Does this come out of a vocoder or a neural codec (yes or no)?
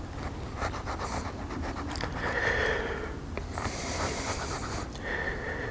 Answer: no